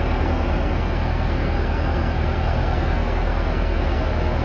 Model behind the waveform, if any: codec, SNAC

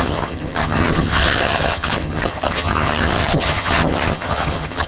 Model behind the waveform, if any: vocoder, HiFi-GAN